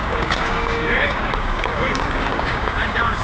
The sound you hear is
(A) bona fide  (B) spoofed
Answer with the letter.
B